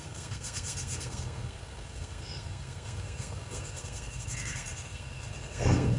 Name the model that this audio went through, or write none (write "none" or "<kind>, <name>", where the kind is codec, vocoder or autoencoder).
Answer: codec, SNAC